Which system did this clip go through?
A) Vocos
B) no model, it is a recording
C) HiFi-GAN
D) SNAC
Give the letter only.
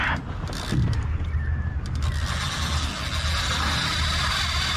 B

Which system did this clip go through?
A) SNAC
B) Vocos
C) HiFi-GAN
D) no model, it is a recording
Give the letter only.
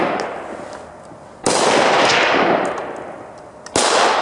D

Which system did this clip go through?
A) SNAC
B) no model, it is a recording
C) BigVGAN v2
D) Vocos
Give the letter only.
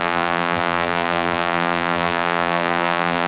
C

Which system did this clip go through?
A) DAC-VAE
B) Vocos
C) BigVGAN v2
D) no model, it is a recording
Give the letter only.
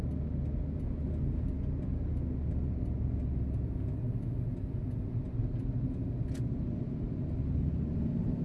D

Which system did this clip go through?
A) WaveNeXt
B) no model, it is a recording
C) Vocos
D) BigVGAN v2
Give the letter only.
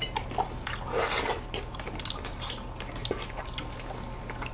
B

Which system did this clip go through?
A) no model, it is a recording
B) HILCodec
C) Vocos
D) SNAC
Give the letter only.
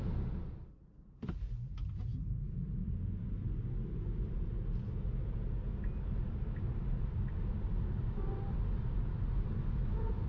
A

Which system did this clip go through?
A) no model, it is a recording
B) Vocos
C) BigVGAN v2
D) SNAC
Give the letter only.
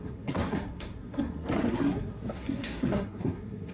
D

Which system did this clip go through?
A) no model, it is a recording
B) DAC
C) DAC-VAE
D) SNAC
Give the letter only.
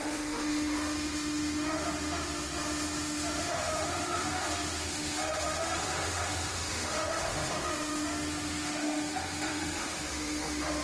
C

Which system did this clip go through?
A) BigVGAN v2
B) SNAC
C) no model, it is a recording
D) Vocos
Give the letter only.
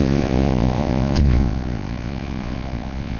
D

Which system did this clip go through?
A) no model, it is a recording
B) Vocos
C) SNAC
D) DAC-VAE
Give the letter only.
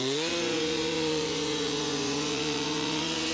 B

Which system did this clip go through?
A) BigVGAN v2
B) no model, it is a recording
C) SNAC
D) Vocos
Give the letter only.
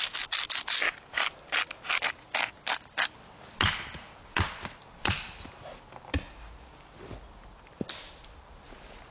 B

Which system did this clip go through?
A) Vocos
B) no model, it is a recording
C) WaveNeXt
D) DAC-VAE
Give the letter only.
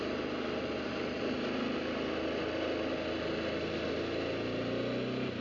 B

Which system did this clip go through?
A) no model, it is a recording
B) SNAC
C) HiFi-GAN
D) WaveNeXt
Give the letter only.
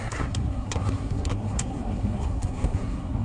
B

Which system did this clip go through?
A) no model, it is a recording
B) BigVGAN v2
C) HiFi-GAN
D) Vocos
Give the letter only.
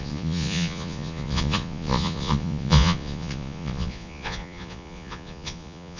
D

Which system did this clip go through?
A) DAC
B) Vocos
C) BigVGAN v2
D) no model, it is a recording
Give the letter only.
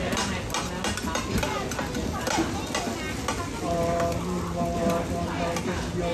D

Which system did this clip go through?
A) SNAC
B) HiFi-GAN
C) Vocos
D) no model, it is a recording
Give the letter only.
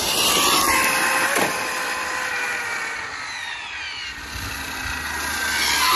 D